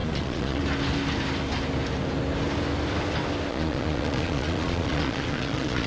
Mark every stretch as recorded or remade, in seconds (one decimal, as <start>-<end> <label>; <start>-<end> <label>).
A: 0.0-0.6 remade; 0.6-3.5 recorded; 3.5-5.9 remade